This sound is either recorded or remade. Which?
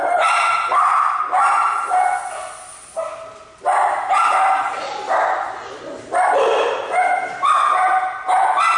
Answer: recorded